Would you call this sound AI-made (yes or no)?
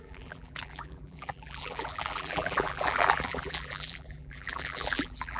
yes